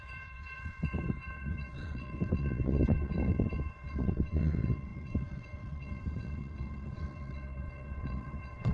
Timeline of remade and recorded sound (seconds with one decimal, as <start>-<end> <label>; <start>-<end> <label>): 0.0-8.7 remade